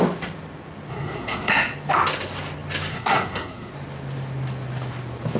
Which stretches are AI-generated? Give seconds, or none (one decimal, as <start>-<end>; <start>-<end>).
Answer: 0.9-1.5; 2.9-3.7